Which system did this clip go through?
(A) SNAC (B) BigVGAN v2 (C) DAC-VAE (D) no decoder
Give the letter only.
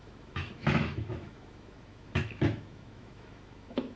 C